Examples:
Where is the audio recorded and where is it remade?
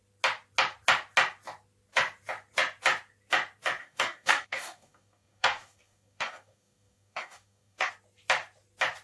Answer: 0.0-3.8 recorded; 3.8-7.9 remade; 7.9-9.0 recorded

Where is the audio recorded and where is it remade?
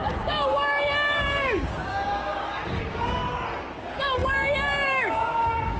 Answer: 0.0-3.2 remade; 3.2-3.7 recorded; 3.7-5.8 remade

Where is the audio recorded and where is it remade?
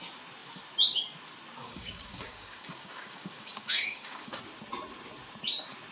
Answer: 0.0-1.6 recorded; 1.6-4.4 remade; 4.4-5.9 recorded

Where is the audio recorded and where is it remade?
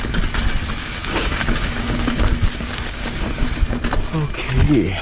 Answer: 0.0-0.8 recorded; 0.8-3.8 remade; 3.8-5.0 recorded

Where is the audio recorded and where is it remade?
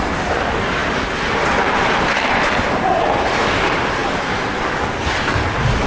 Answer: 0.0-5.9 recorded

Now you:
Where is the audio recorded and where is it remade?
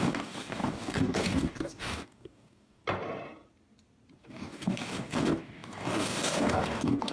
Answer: 0.0-2.8 remade; 2.8-4.2 recorded; 4.2-7.1 remade